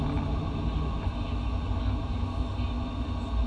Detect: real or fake real